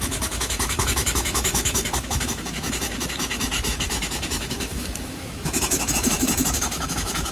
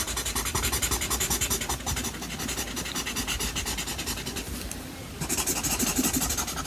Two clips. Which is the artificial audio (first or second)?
first